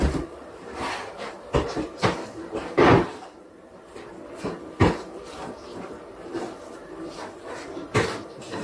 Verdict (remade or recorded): remade